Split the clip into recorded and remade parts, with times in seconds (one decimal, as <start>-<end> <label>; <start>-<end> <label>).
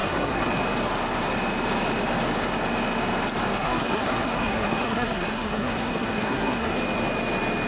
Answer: 0.0-0.6 remade; 0.6-3.6 recorded; 3.6-6.7 remade; 6.7-7.7 recorded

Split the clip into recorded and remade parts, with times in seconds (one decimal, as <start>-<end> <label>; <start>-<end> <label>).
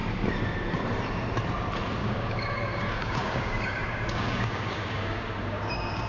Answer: 0.0-2.0 recorded; 2.0-6.1 remade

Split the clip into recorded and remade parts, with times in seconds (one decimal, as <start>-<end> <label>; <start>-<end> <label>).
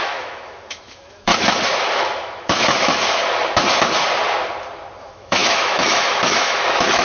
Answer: 0.0-1.3 remade; 1.3-1.9 recorded; 1.9-3.2 remade; 3.2-5.0 recorded; 5.0-7.0 remade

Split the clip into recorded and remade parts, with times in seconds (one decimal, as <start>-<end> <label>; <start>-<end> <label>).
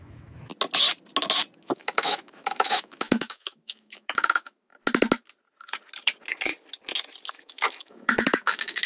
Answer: 0.0-0.5 remade; 0.5-1.6 recorded; 1.6-4.7 remade; 4.7-7.3 recorded; 7.3-8.9 remade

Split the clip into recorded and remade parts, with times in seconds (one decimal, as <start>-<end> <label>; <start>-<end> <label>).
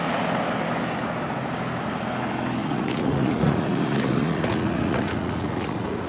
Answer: 0.0-2.6 recorded; 2.6-6.1 remade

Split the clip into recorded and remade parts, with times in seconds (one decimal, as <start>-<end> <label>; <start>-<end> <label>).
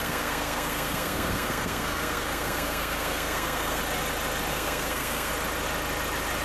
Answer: 0.0-3.8 remade; 3.8-4.5 recorded; 4.5-5.3 remade; 5.3-6.4 recorded